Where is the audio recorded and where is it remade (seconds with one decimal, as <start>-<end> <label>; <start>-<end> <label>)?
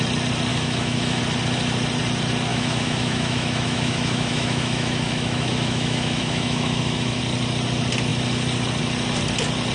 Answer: 0.0-0.5 recorded; 0.5-1.2 remade; 1.2-2.5 recorded; 2.5-7.2 remade; 7.2-9.7 recorded